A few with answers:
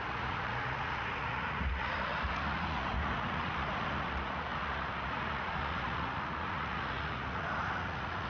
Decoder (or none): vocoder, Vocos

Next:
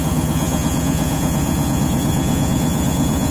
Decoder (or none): vocoder, Vocos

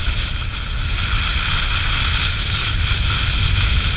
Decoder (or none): none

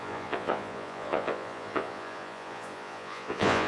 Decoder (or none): vocoder, Vocos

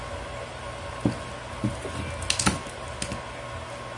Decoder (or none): none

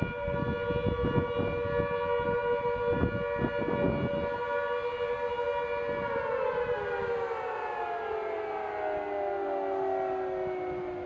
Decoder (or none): none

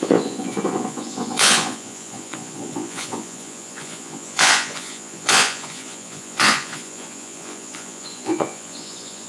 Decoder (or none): vocoder, Vocos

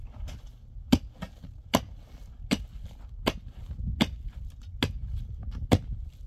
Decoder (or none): none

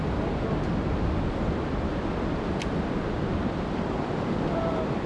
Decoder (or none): none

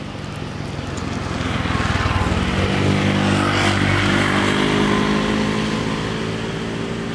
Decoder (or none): none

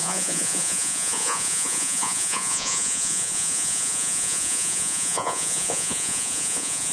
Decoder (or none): vocoder, Vocos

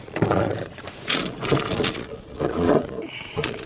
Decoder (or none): vocoder, Vocos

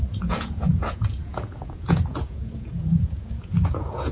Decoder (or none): vocoder, Vocos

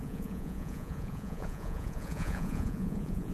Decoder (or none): vocoder, Vocos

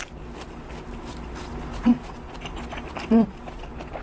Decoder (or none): none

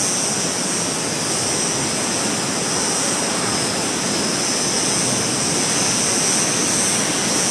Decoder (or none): none